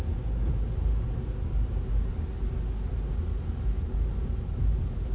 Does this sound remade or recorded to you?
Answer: recorded